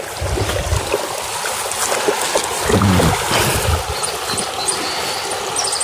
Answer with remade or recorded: recorded